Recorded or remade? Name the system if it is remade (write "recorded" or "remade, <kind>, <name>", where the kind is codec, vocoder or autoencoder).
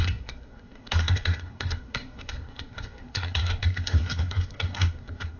remade, codec, SNAC